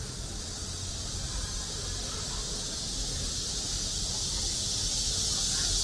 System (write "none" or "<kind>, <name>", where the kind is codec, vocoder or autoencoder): none